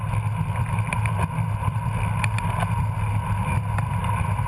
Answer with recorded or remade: recorded